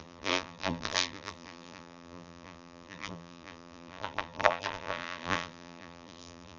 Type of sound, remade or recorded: remade